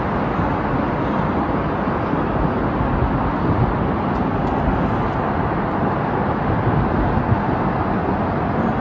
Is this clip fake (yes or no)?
no